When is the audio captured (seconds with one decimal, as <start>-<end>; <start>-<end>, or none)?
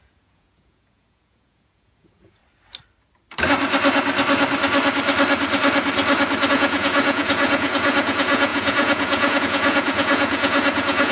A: 2.4-6.5